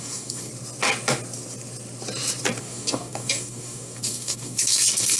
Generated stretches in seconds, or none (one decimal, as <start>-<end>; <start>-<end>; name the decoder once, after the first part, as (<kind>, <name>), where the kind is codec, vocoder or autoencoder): 0.0-0.5 (codec, DAC); 2.6-5.2

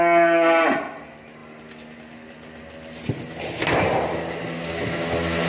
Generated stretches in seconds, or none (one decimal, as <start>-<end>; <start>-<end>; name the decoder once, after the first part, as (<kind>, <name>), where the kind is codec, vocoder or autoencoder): none

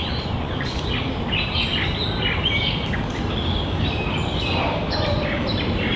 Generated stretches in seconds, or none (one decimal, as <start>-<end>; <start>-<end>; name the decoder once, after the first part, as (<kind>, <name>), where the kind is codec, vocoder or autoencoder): 0.0-0.9 (vocoder, Vocos)

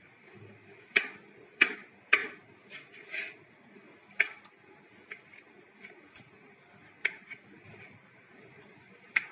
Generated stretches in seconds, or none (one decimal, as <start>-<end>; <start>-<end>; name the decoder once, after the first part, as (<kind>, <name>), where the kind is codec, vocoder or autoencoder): 0.0-2.2 (vocoder, BigVGAN v2); 5.9-9.3

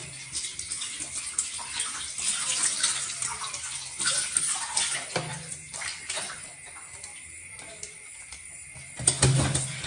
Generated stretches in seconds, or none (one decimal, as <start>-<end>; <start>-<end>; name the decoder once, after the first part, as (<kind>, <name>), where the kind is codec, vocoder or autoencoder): 0.0-3.4 (vocoder, BigVGAN v2); 5.3-8.5

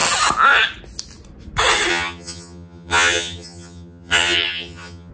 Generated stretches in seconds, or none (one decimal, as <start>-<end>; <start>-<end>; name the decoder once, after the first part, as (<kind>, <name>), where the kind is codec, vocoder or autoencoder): 1.9-5.1 (vocoder, HiFi-GAN)